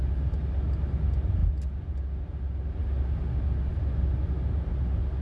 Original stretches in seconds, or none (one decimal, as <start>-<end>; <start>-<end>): 0.0-5.2